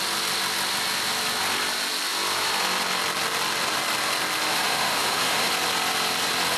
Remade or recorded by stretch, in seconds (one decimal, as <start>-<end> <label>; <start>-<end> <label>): 0.0-4.5 recorded; 4.5-5.5 remade; 5.5-6.6 recorded